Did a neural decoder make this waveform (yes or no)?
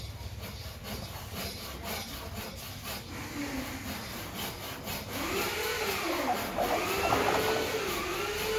no